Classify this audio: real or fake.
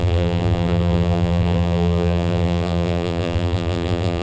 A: fake